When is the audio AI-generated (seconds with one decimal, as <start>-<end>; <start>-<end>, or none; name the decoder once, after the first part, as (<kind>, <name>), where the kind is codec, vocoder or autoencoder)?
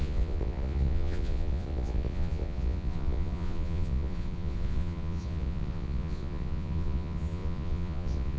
0.0-8.4 (vocoder, Vocos)